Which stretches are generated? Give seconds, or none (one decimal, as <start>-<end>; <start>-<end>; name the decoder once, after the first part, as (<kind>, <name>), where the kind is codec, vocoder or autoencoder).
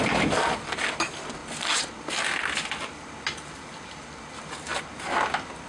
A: none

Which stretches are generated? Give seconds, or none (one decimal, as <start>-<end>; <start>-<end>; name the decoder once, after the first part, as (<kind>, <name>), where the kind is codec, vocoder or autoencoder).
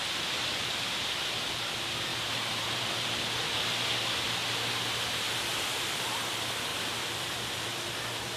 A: 2.1-3.2 (vocoder, BigVGAN v2); 6.7-7.6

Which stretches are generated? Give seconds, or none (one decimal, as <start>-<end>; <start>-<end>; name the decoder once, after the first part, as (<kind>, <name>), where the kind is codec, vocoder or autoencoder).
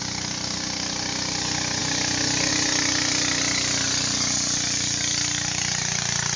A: none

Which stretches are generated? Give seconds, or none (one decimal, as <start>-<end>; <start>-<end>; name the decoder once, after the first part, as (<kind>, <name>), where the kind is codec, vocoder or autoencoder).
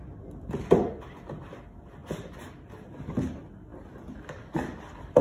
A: 2.0-2.7 (vocoder, BigVGAN v2)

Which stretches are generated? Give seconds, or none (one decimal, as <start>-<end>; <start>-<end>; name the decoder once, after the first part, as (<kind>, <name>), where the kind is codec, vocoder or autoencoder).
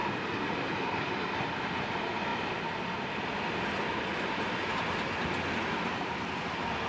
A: 2.3-6.4 (vocoder, BigVGAN v2)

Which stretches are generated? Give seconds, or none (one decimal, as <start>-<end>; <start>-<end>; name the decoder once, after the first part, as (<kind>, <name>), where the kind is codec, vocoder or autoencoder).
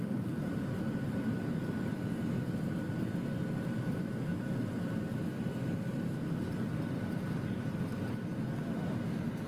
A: 0.0-4.3 (vocoder, BigVGAN v2); 5.5-7.9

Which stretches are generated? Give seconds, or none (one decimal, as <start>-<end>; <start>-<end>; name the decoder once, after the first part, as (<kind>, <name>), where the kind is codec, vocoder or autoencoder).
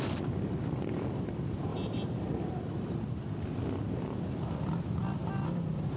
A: 1.7-2.3 (vocoder, BigVGAN v2); 5.2-6.0